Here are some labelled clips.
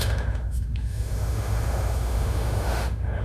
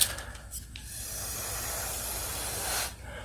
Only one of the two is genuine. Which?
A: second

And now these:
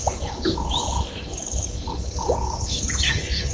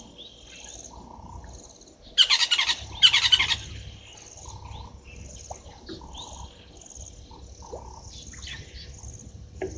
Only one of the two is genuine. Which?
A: second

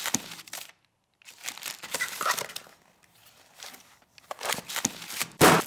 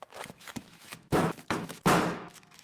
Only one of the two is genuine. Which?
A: first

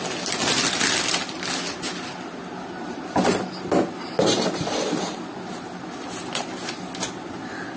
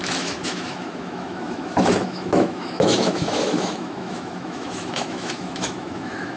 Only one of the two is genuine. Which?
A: first